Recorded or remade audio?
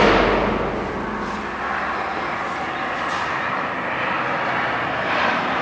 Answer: recorded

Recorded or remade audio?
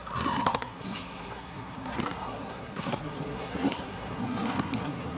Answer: remade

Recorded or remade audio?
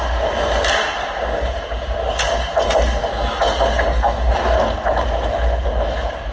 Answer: recorded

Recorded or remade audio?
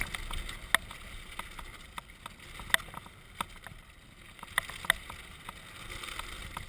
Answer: recorded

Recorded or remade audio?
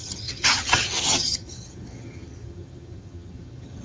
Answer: remade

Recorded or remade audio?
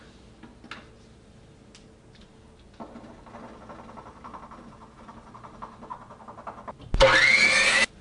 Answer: recorded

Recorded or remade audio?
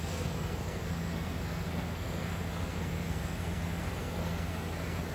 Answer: remade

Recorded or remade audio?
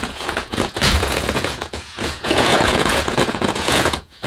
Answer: remade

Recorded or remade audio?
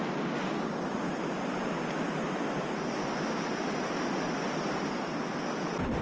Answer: recorded